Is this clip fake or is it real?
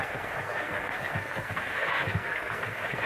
fake